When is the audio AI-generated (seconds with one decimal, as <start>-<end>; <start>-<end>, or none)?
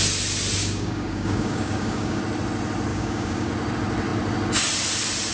0.6-2.2; 2.9-3.5